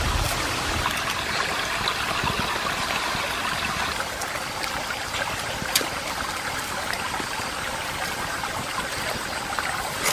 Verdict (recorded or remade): recorded